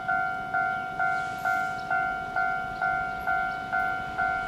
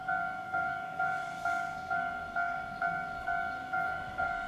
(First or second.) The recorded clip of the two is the first